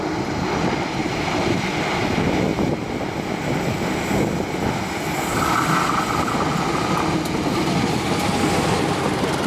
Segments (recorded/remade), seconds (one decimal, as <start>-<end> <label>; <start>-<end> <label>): 0.0-1.0 recorded; 1.0-1.7 remade; 1.7-9.5 recorded